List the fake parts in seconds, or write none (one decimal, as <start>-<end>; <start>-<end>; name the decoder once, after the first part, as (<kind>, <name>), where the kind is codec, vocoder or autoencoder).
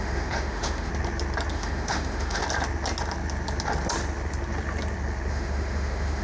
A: 0.0-0.9 (autoencoder, DAC-VAE); 1.5-2.4; 5.3-6.2